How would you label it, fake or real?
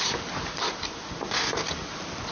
real